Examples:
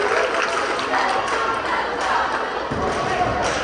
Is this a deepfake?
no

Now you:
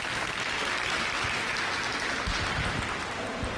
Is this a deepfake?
no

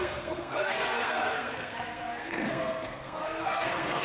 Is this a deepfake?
yes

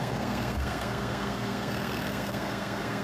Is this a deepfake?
yes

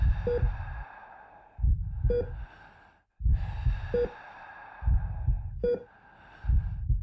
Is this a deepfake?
no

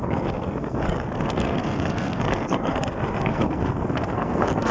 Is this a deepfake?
yes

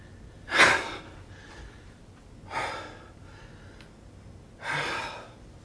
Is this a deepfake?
no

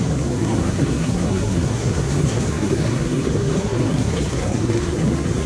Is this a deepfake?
yes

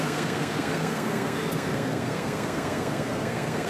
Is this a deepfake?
yes